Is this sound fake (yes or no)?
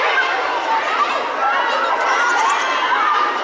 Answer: no